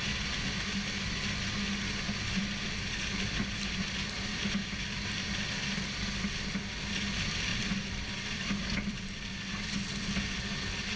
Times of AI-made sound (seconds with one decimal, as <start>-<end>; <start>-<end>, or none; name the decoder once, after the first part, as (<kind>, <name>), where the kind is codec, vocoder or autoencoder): 4.6-7.1 (vocoder, BigVGAN v2); 7.5-9.1